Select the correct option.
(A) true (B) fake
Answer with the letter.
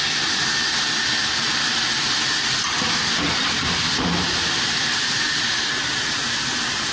A